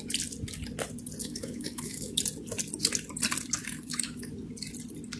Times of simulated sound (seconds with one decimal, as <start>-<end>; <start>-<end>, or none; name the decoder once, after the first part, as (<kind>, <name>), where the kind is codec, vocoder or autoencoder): 1.2-2.2 (autoencoder, DAC-VAE); 3.6-4.3